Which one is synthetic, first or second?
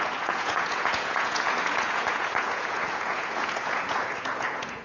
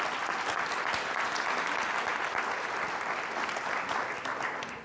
first